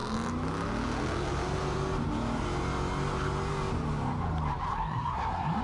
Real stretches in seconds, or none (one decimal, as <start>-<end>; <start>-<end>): 0.0-4.7